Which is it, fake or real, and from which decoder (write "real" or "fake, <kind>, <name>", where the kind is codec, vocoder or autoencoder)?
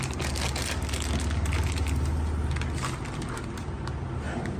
real